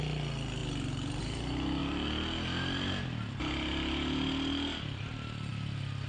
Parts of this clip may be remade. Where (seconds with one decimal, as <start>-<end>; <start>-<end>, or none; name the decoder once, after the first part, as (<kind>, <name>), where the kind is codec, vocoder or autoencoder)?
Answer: none